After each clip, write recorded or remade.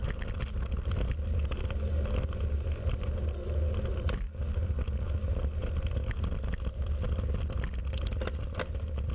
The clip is recorded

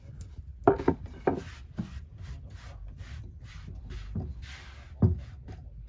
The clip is recorded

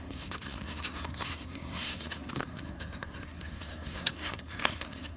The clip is remade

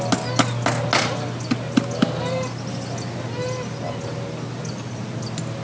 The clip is recorded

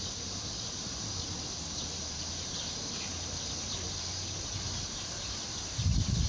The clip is remade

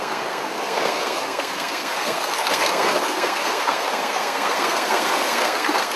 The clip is remade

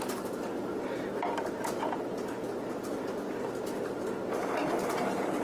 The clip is recorded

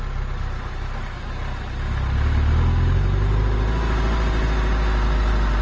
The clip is recorded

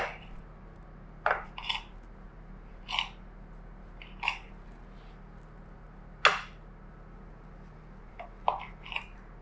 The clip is recorded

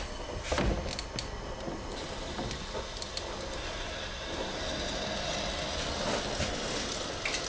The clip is recorded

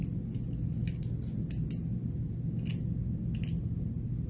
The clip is recorded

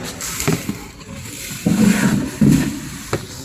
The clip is remade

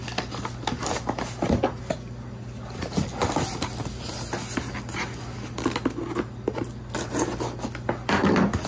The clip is recorded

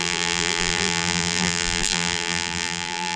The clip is remade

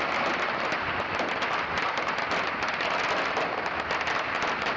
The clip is recorded